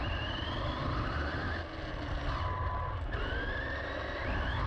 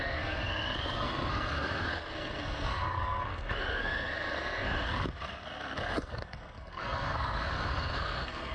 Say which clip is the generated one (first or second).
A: second